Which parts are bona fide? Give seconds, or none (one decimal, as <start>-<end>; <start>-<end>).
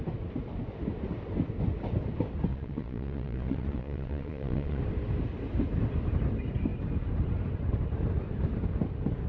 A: 0.0-2.5; 4.8-9.3